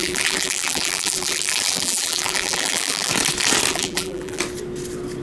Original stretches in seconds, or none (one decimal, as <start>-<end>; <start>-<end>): 3.1-3.7; 4.4-5.2